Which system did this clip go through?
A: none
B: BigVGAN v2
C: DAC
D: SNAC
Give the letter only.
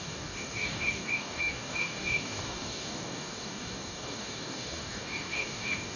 C